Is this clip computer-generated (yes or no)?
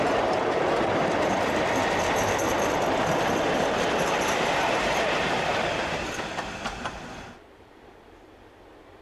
no